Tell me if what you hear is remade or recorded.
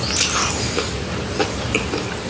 recorded